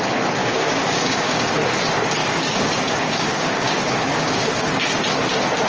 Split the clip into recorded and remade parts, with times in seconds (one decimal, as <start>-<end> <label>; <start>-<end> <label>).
0.0-0.4 recorded; 0.4-1.5 remade; 1.5-2.2 recorded; 2.2-4.7 remade; 4.7-5.7 recorded